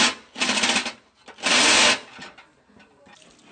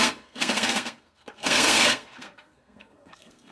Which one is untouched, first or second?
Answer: first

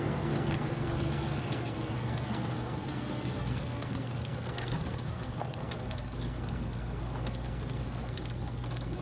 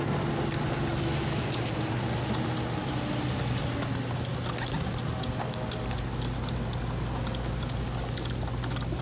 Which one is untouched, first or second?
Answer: second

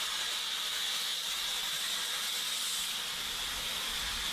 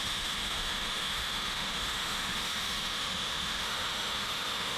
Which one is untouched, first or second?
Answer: first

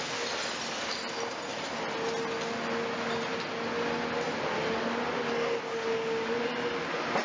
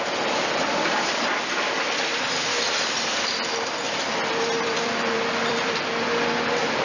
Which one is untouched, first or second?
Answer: first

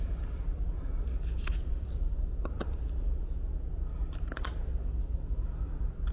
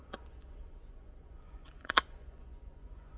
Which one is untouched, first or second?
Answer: first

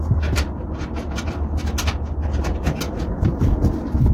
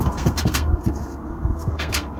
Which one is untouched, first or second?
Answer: first